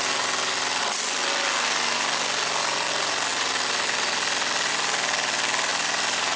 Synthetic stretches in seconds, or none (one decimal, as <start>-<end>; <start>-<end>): 5.7-6.4